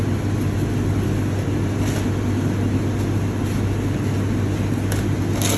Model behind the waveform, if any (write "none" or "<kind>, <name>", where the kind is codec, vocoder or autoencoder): none